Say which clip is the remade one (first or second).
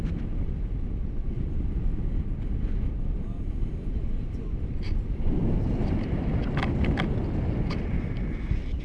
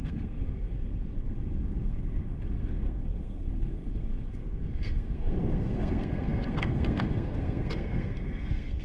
second